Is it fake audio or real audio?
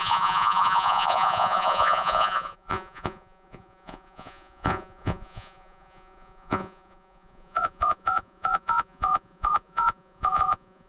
fake